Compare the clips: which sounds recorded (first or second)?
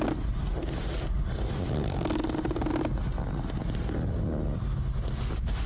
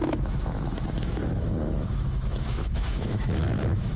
first